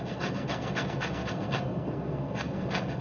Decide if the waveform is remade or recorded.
remade